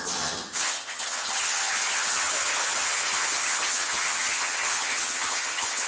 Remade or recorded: remade